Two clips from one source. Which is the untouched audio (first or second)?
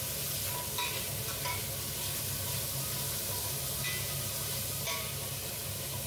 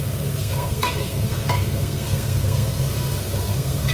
first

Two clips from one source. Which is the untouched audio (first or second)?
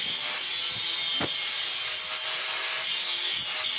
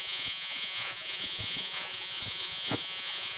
first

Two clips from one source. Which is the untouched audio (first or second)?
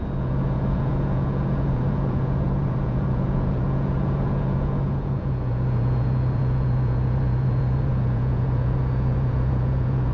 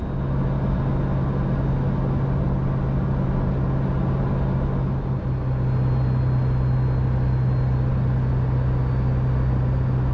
second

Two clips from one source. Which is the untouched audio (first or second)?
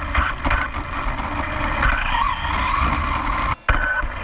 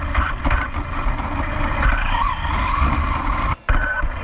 first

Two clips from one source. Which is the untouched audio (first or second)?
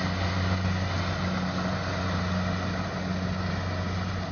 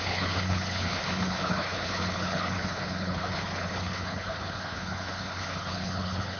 first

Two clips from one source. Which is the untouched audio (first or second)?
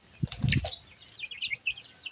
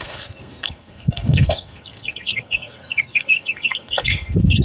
first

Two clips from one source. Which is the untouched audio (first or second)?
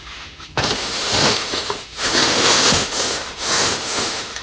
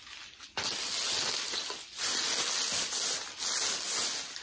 second